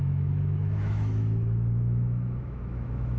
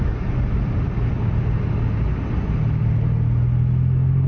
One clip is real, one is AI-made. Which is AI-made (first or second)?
first